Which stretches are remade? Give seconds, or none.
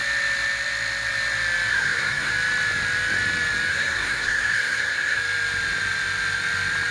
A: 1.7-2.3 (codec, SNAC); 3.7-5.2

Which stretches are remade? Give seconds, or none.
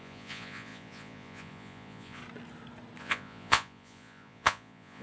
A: 0.0-2.2 (vocoder, Vocos); 3.0-5.0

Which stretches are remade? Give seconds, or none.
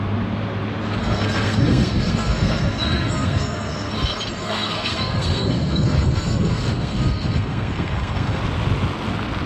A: 1.0-3.9 (codec, SNAC); 4.4-8.4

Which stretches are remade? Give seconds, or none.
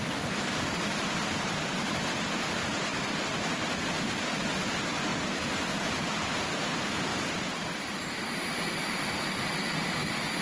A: none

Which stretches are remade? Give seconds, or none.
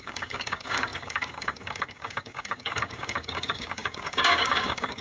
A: 0.0-5.0 (codec, DAC)